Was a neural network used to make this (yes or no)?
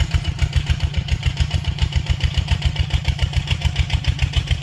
yes